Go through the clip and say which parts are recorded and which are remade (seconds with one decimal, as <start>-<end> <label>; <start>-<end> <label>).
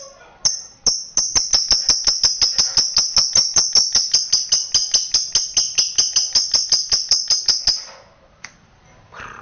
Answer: 0.0-9.4 recorded